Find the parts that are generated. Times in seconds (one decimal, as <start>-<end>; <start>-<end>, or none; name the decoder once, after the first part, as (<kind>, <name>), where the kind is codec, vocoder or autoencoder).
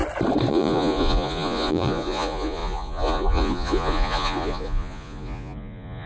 0.5-6.1 (vocoder, Vocos)